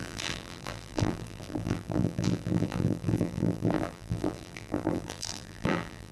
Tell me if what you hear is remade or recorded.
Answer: remade